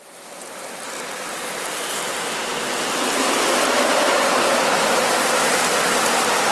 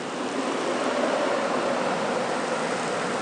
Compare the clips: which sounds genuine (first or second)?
second